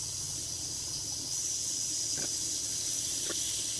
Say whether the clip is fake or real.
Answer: real